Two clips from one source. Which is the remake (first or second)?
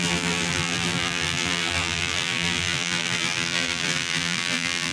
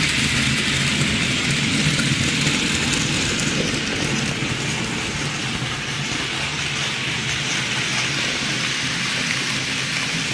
first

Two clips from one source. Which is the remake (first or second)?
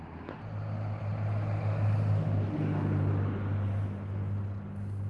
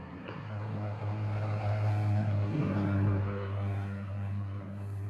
second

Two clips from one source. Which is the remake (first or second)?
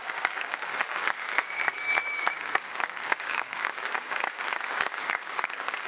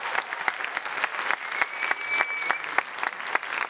first